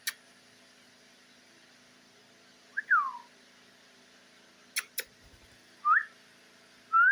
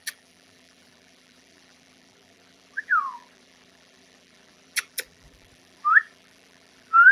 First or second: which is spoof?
second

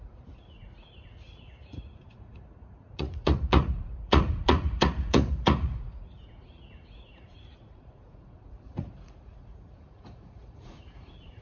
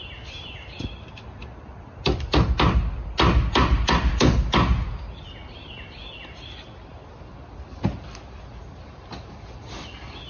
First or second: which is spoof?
first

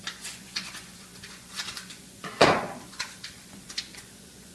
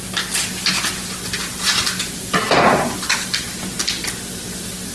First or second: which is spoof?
first